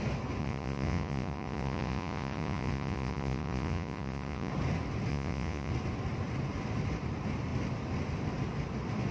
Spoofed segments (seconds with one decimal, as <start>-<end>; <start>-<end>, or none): 0.4-4.5; 5.1-5.7